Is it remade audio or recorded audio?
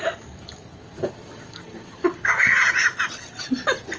recorded